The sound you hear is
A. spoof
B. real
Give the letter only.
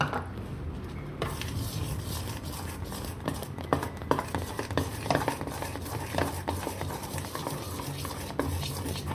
B